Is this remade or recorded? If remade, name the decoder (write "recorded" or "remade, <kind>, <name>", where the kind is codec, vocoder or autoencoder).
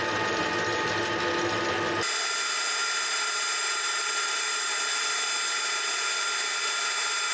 recorded